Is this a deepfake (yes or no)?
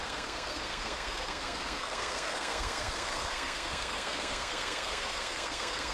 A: yes